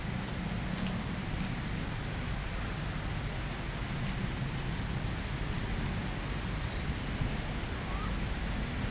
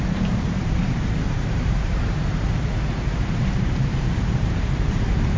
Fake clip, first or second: second